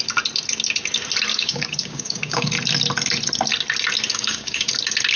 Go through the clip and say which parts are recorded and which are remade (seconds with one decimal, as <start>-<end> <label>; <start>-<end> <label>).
0.0-1.3 recorded; 1.3-2.5 remade; 2.5-4.1 recorded; 4.1-4.7 remade; 4.7-5.2 recorded